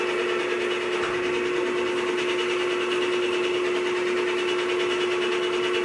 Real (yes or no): yes